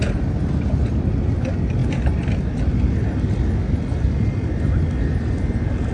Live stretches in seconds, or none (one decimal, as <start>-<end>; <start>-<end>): 0.0-5.9